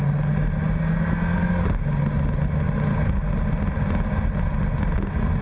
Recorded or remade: recorded